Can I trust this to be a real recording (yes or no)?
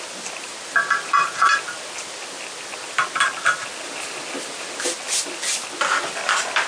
yes